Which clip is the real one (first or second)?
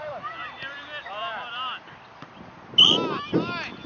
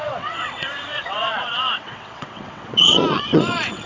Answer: first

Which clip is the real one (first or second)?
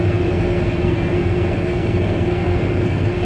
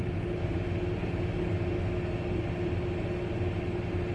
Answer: second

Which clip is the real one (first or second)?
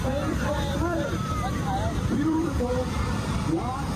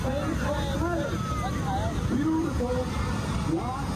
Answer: second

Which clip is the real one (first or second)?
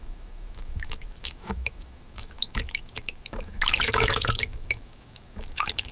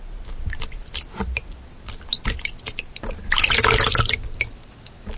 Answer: second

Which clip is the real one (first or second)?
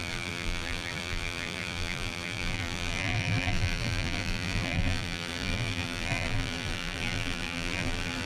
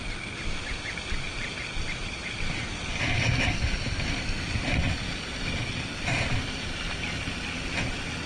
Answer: second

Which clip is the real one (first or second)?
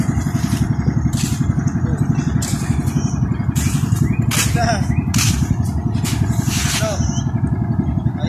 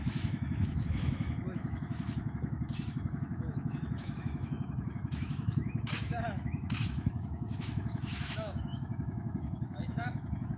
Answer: first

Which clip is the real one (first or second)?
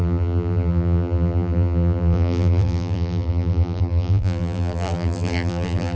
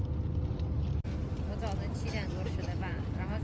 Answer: second